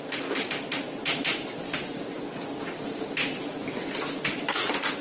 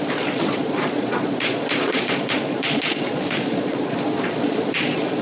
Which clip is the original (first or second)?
first